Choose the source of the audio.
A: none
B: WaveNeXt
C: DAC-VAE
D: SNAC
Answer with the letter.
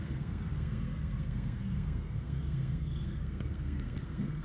D